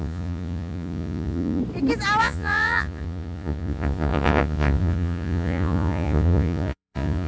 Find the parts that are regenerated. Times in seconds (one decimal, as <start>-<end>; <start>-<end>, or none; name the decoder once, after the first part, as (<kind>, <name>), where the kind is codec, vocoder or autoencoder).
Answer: 0.0-1.6 (vocoder, Vocos); 2.2-7.3